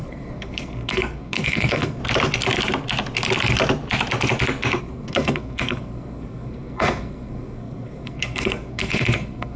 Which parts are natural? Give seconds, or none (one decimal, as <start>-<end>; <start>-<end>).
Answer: 2.0-4.8